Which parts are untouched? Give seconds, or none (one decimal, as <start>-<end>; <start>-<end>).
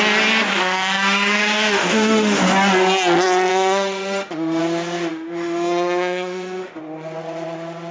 0.0-0.5; 2.4-3.5; 4.6-5.1; 6.8-7.9